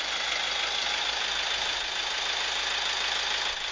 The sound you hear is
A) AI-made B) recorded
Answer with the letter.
B